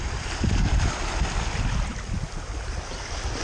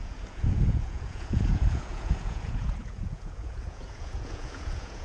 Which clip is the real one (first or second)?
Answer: first